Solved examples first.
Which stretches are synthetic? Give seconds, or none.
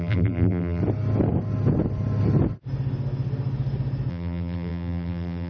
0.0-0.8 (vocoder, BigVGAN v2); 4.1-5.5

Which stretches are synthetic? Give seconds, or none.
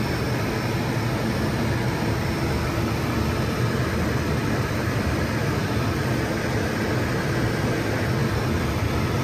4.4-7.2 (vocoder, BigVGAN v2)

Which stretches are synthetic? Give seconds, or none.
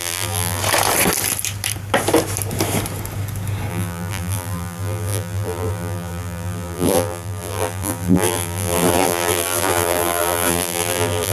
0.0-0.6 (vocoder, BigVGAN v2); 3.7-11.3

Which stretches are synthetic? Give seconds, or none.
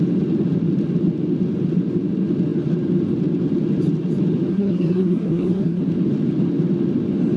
4.5-5.8 (codec, SNAC)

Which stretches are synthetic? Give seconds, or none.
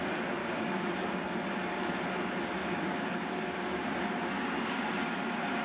0.4-0.9 (codec, DAC); 2.6-3.9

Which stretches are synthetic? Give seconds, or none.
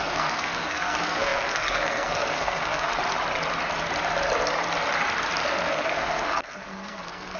0.0-3.0 (codec, SNAC); 5.7-7.4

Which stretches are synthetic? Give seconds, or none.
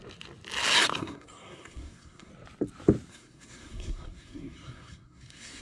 1.0-2.3 (codec, SNAC); 3.1-5.6